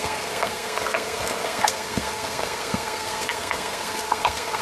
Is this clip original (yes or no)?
no